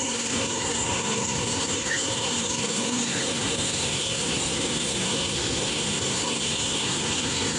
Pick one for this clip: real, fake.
fake